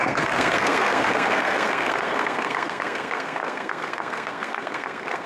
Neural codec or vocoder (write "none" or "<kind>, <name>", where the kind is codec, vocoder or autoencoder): codec, SNAC